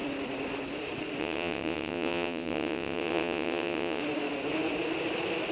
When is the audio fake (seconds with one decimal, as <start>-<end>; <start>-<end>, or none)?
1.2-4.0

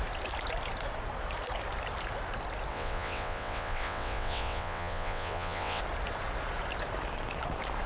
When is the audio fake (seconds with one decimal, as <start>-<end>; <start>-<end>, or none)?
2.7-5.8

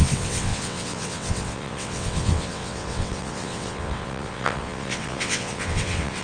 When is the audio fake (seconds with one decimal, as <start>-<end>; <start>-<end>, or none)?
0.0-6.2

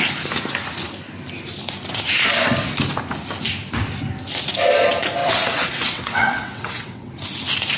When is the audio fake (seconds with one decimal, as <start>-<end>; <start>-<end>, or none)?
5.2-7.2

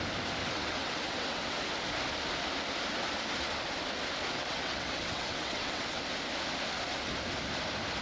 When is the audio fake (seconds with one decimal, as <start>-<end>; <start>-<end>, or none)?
0.4-1.6; 4.3-6.0

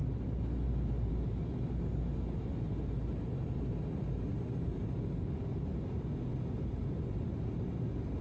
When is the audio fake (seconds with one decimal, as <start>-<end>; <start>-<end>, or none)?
none

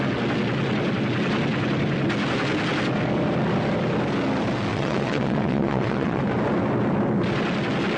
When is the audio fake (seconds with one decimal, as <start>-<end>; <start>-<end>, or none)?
4.7-6.2